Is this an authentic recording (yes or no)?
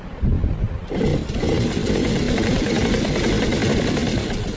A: yes